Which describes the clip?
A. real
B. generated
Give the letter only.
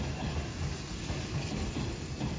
A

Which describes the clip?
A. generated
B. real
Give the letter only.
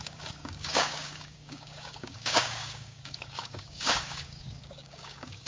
A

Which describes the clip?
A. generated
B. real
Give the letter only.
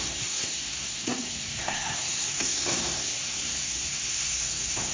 A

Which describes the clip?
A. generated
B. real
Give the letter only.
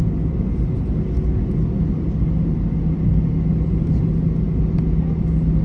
B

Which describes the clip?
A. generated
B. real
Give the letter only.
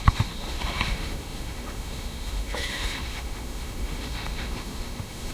A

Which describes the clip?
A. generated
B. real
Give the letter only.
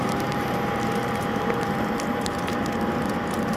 A